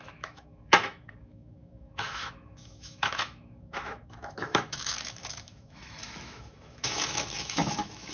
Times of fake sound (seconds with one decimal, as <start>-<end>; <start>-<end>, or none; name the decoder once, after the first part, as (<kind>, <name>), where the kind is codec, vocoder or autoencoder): 0.0-8.1 (autoencoder, DAC-VAE)